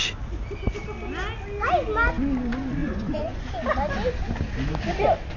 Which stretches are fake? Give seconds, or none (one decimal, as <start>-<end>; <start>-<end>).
2.8-3.4